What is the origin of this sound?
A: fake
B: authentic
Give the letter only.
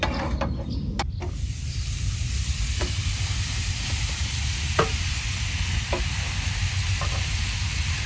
B